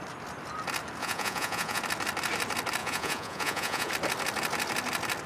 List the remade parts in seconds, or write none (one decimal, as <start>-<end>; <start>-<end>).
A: 1.0-1.8; 2.8-3.9